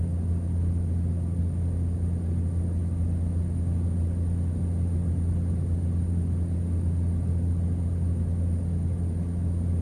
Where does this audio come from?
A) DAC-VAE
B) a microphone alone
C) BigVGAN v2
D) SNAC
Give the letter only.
B